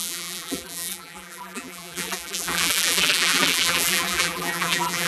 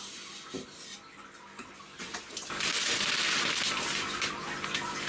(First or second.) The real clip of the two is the second